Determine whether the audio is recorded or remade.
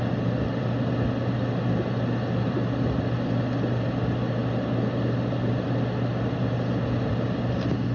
recorded